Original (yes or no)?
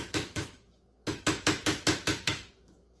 no